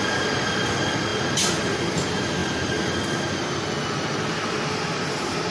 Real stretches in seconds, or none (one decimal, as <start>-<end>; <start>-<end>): 0.0-5.5